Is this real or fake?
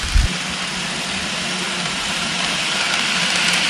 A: fake